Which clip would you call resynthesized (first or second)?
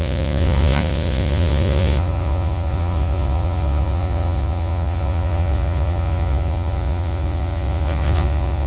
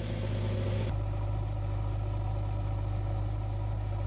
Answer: first